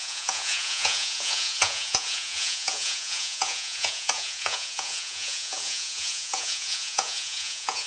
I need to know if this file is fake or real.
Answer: fake